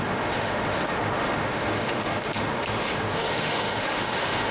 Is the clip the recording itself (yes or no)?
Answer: no